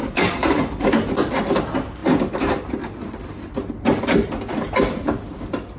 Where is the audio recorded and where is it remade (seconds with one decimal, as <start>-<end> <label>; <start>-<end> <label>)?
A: 0.0-0.9 remade; 0.9-5.8 recorded